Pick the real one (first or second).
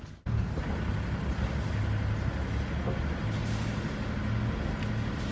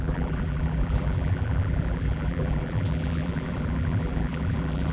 first